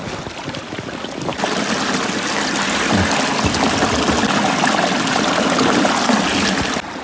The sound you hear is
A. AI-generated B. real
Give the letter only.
B